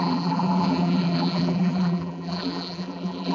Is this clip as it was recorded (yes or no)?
no